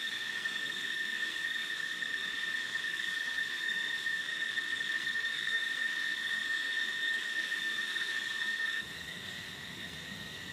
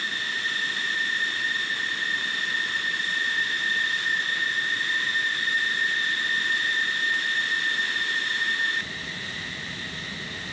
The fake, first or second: first